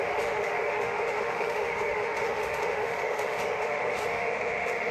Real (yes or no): no